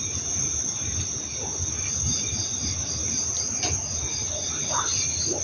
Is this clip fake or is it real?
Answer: fake